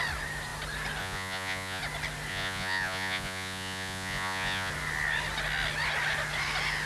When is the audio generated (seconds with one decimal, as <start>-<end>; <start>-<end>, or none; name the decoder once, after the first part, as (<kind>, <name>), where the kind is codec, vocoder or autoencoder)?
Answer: 1.0-1.8 (vocoder, Vocos); 2.3-4.7